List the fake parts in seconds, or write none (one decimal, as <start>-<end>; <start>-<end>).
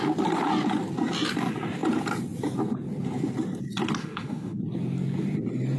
4.0-4.6